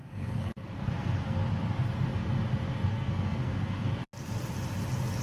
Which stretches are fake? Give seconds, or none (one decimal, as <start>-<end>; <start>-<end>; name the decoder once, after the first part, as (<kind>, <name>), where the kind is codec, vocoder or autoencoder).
0.0-1.5 (codec, SNAC); 2.9-3.9